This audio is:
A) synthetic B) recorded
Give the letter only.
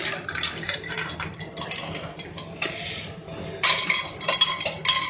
B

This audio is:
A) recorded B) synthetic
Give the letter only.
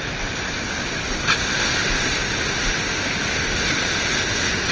A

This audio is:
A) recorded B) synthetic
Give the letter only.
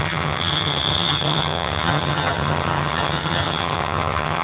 B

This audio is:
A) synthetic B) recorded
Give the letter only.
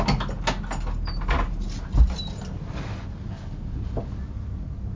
B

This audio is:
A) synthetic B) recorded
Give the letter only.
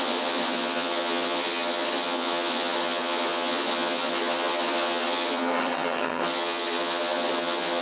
A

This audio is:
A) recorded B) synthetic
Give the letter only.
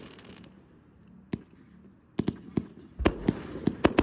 A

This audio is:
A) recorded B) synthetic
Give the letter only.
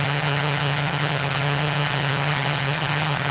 B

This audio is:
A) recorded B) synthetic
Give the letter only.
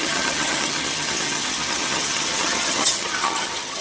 B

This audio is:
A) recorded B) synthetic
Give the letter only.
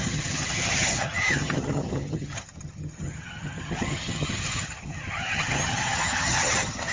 B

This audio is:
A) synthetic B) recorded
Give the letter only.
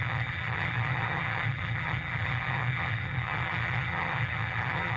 A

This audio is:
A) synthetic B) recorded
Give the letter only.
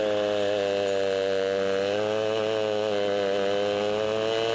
B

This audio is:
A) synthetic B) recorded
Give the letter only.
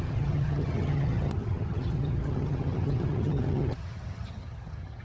A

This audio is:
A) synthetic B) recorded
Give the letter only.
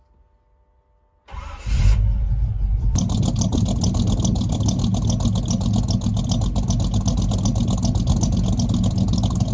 B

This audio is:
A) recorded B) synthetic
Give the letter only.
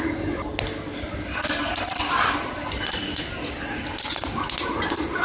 A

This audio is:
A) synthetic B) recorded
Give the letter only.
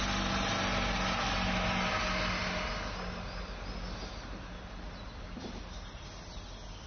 B